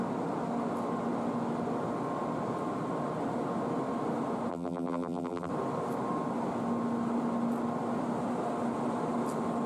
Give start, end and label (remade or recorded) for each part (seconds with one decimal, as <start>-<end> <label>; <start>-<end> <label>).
0.0-4.5 recorded; 4.5-5.5 remade; 5.5-9.7 recorded